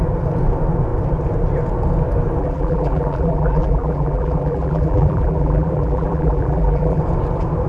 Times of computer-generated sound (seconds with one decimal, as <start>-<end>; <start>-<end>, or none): 2.4-7.0